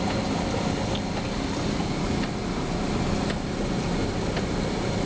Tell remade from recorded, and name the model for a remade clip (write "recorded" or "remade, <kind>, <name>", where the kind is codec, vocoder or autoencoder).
recorded